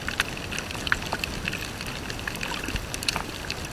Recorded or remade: recorded